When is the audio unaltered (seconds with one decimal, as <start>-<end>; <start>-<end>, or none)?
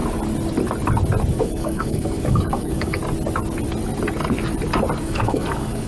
0.0-1.3; 3.0-5.0